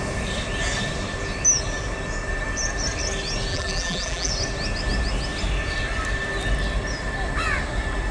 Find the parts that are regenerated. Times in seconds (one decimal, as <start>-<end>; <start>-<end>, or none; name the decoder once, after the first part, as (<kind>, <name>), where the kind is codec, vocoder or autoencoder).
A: 3.5-4.3 (vocoder, BigVGAN v2)